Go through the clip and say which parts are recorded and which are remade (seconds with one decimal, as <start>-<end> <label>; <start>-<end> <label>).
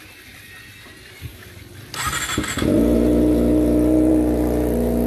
0.0-1.3 recorded; 1.3-2.2 remade; 2.2-5.1 recorded